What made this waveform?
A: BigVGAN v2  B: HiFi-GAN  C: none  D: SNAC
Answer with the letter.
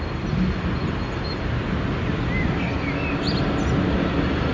C